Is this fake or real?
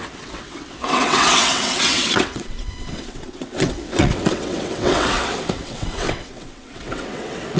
fake